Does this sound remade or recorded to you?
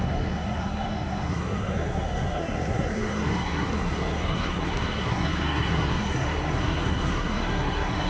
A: remade